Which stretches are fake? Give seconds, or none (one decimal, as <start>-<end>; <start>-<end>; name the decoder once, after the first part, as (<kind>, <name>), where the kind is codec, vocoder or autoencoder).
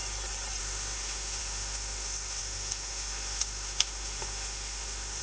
0.6-5.2 (autoencoder, DAC-VAE)